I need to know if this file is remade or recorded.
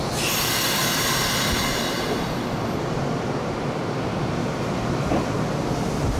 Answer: recorded